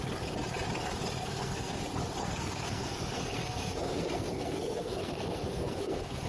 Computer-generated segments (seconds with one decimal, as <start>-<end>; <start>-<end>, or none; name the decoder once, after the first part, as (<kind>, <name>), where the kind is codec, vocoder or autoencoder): 1.2-1.8 (codec, SNAC); 2.2-6.3